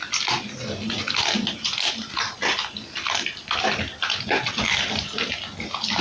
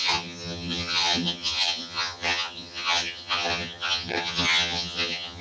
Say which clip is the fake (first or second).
second